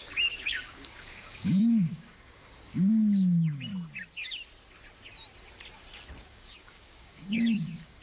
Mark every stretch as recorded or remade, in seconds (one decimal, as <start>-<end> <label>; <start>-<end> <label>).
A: 0.0-3.7 remade; 3.7-6.1 recorded; 6.1-8.0 remade